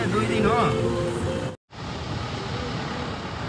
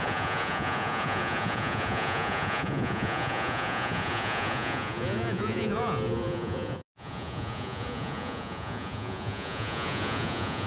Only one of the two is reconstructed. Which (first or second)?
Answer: second